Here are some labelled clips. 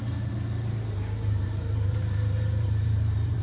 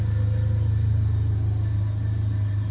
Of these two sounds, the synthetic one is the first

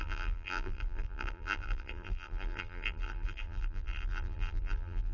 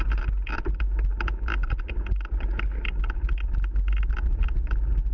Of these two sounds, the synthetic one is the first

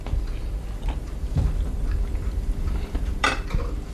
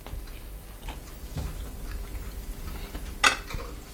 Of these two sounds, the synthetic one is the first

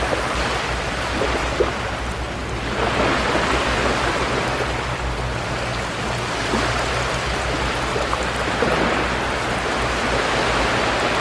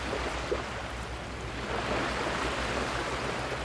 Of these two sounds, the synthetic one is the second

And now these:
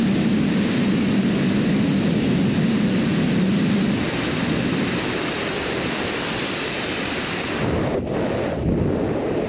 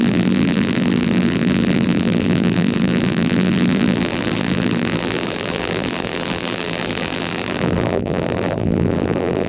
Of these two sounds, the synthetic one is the second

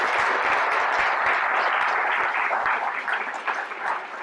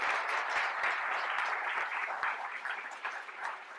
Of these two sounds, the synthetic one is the second